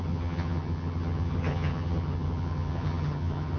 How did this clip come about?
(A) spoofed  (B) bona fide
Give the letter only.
A